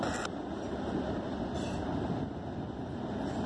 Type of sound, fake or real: real